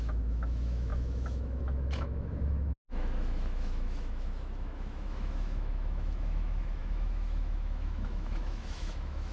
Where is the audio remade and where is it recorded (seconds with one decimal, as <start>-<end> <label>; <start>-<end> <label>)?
0.0-9.3 remade